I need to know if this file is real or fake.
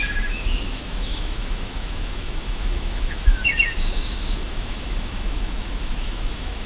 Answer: fake